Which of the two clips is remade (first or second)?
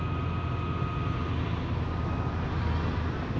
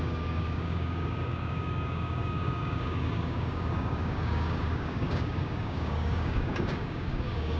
second